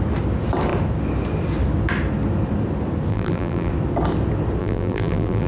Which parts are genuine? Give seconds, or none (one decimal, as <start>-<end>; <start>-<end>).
0.0-3.1; 3.7-4.6